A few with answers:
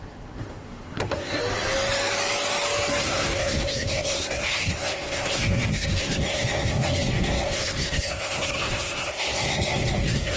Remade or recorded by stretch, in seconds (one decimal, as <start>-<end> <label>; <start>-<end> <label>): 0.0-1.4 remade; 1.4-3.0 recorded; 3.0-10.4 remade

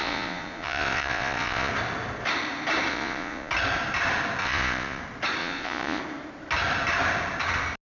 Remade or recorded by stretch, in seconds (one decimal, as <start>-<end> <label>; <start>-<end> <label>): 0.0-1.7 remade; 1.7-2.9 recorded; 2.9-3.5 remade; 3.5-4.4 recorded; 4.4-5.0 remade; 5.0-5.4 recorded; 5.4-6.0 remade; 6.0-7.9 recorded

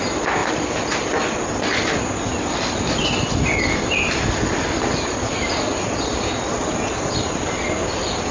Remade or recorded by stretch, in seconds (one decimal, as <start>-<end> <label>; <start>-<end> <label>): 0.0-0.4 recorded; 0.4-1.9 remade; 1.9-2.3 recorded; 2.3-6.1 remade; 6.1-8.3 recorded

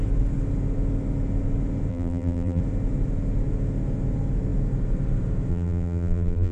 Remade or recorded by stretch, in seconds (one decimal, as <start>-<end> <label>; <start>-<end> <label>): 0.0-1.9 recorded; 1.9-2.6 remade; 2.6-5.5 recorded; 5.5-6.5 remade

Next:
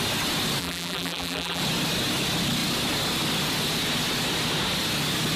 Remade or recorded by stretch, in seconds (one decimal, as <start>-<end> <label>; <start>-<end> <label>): 0.0-0.6 recorded; 0.6-1.6 remade; 1.6-5.4 recorded

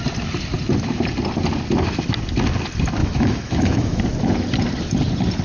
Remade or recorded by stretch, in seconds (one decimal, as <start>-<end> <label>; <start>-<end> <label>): 0.0-3.0 recorded; 3.0-4.0 remade; 4.0-5.4 recorded

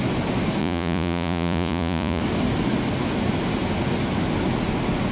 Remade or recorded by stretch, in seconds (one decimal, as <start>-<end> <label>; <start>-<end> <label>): 0.0-0.6 recorded; 0.6-2.2 remade; 2.2-5.1 recorded

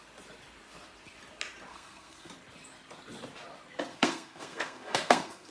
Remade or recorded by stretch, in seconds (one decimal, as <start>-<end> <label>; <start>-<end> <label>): 0.0-1.7 recorded; 1.7-2.3 remade; 2.3-3.9 recorded; 3.9-5.5 remade